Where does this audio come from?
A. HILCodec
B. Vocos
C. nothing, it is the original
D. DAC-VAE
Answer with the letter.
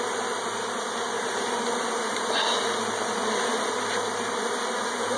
C